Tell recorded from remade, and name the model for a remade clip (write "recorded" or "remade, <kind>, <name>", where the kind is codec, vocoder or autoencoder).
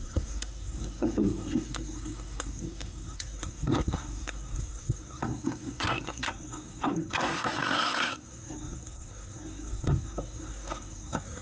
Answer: remade, codec, SNAC